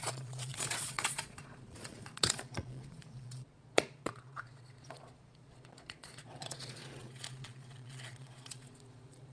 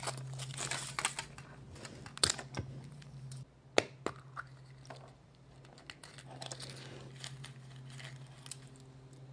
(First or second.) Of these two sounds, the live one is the second